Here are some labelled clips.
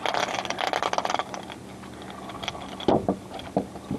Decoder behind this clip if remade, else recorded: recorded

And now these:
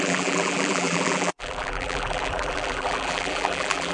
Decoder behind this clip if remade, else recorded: remade, vocoder, BigVGAN v2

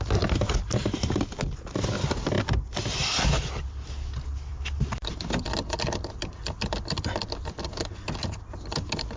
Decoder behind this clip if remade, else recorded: recorded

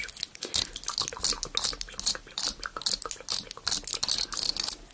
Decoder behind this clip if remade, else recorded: recorded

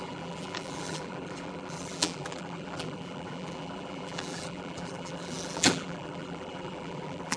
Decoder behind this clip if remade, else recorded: remade, vocoder, BigVGAN v2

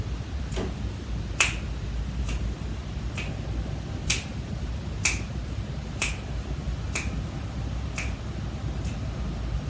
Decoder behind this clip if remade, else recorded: recorded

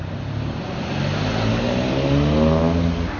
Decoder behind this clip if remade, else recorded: recorded